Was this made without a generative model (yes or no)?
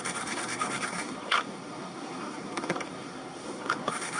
no